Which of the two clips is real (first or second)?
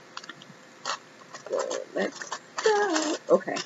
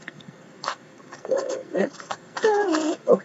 first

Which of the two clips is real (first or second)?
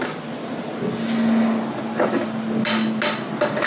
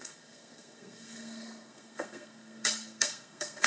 first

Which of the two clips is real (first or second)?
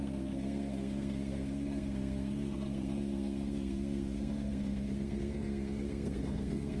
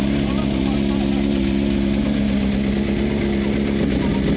second